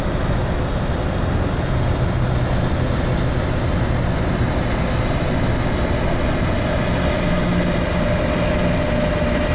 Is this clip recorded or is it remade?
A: recorded